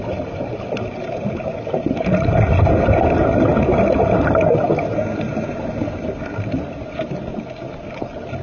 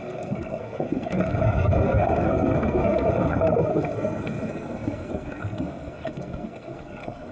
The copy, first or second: second